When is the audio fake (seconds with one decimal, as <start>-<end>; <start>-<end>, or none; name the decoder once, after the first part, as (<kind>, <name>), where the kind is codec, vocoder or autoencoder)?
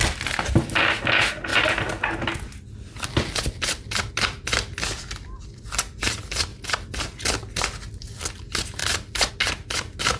none